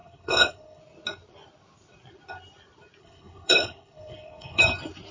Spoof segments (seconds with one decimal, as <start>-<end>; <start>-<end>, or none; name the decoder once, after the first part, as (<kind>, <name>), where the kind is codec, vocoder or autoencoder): 0.0-0.8 (codec, HILCodec); 3.0-4.6